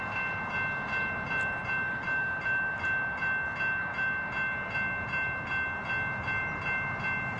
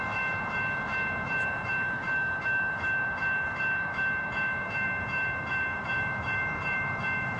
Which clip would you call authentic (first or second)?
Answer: first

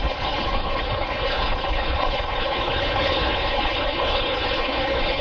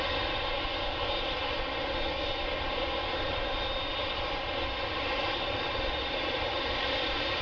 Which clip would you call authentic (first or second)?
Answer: second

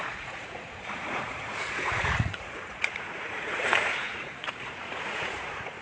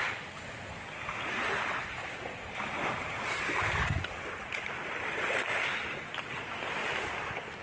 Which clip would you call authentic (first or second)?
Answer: second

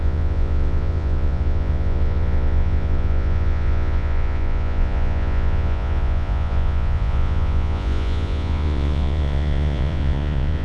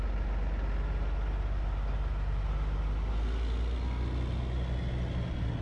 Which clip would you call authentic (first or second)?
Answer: second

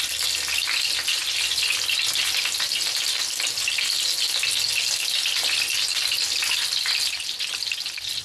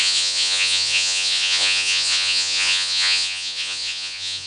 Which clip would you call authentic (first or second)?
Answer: first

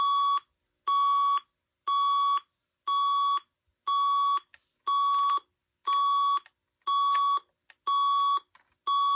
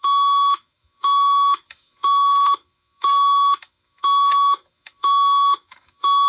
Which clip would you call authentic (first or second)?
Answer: first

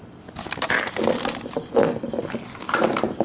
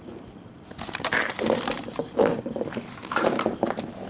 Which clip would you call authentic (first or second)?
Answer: first